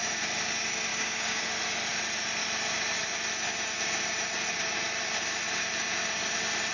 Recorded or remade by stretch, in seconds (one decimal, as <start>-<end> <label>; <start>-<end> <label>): 0.0-0.9 recorded; 0.9-1.4 remade; 1.4-6.7 recorded